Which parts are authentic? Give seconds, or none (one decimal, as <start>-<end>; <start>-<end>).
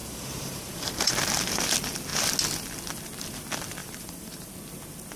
1.1-3.8; 4.5-5.2